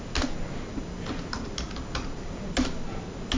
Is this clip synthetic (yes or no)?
no